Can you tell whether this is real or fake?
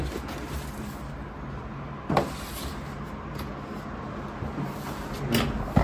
real